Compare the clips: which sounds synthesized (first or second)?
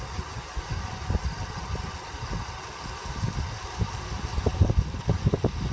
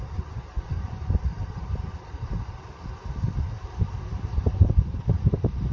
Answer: second